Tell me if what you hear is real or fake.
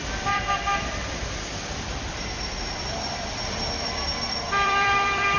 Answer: fake